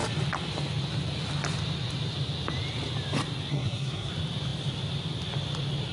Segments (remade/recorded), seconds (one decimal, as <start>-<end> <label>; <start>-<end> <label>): 0.0-3.5 recorded; 3.5-4.1 remade; 4.1-5.9 recorded

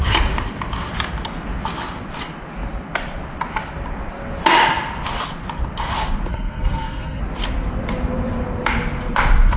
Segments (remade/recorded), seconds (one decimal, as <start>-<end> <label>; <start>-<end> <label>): 0.0-6.3 recorded; 6.3-7.2 remade; 7.2-9.6 recorded